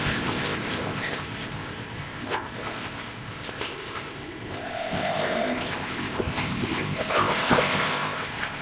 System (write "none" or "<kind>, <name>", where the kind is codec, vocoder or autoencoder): codec, ZipCodec